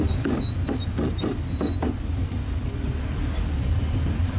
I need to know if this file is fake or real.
real